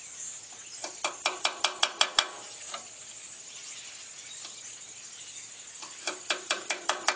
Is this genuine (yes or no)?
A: yes